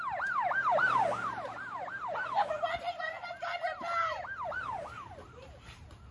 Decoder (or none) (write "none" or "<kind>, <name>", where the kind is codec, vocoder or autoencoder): none